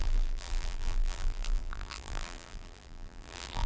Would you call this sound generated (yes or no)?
yes